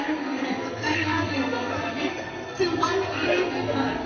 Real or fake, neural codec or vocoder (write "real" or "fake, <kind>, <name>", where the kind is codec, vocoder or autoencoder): fake, codec, SNAC